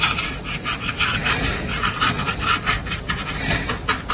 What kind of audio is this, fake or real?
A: fake